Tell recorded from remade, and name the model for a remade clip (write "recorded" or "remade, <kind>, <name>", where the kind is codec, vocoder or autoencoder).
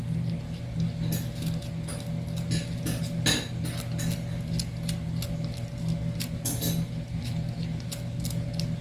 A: recorded